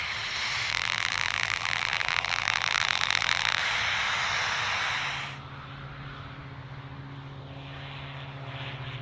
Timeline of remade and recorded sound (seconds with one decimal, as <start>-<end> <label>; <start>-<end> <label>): 0.0-0.7 recorded; 0.7-3.6 remade; 3.6-9.0 recorded

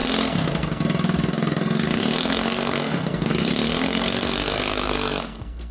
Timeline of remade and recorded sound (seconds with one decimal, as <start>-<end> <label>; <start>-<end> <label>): 0.0-5.7 remade

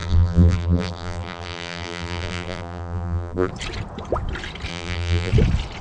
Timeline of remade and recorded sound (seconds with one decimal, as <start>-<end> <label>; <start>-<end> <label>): 0.0-3.5 remade; 3.5-4.7 recorded; 4.7-5.3 remade; 5.3-5.8 recorded

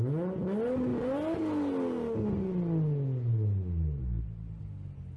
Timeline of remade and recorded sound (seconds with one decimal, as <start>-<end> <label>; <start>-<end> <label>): 0.0-5.2 recorded

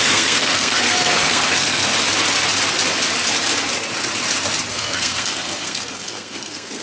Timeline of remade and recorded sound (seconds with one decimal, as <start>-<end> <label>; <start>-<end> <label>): 0.0-1.9 remade; 1.9-4.7 recorded; 4.7-6.8 remade

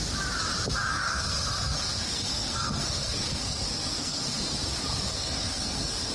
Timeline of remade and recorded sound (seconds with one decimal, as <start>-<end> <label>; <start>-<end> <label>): 0.0-0.8 recorded; 0.8-4.4 remade; 4.4-5.1 recorded; 5.1-6.1 remade